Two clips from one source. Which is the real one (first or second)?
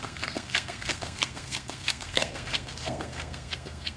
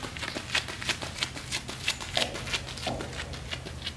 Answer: second